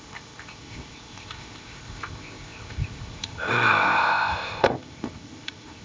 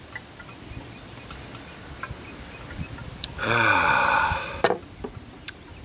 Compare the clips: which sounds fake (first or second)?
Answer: first